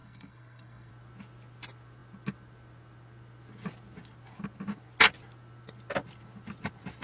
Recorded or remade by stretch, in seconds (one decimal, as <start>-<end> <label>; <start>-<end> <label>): 0.0-0.9 remade; 0.9-7.0 recorded